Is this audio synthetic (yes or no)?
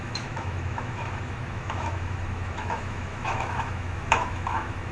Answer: yes